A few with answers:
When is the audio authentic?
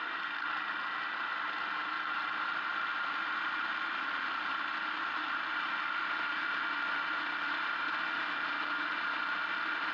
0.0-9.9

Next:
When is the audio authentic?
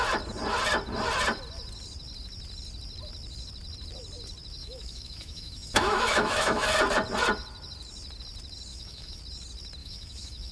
0.0-4.6; 6.7-8.7; 9.2-9.8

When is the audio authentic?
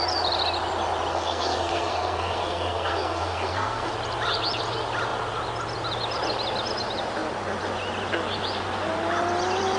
0.0-1.1; 3.9-9.8